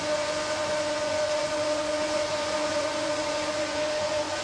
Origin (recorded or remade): remade